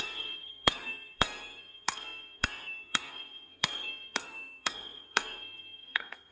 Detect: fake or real fake